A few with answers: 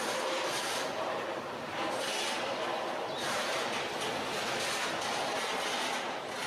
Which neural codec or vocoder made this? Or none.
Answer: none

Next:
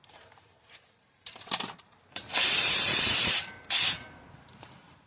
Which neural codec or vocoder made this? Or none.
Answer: vocoder, BigVGAN v2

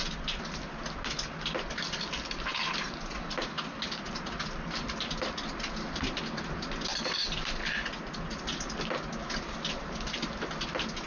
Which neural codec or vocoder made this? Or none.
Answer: none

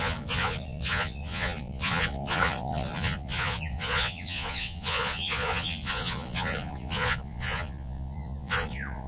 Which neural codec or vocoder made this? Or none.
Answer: vocoder, Vocos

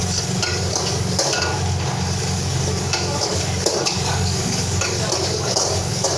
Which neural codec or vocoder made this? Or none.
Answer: codec, DAC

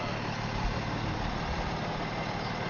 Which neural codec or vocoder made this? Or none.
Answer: none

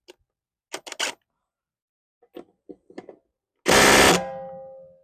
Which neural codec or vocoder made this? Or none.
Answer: none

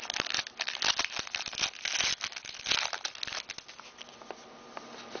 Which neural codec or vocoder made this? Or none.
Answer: none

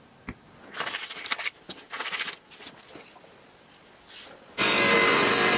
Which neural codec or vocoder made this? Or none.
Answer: none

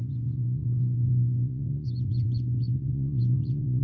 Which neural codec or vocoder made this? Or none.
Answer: vocoder, Vocos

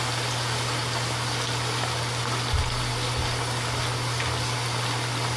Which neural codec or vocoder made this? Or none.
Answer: none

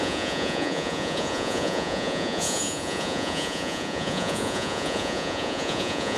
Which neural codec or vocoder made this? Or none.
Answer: vocoder, Vocos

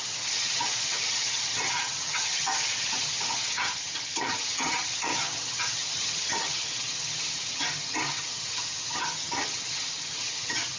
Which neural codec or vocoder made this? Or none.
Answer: vocoder, HiFi-GAN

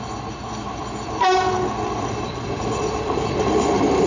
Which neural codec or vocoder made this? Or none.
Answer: none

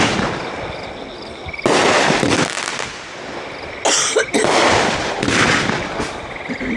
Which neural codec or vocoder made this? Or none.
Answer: none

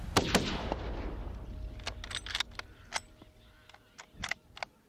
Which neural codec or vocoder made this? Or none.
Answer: none